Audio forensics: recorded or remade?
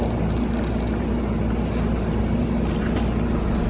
recorded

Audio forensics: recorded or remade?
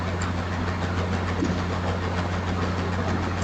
recorded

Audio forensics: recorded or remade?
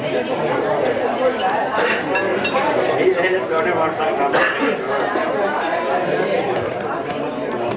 recorded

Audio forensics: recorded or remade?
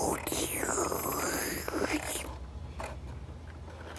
recorded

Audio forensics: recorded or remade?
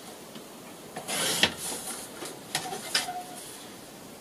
recorded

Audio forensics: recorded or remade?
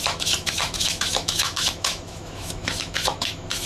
remade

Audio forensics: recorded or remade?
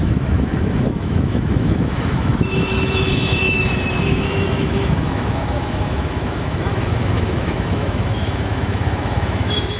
remade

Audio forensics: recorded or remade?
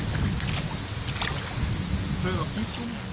recorded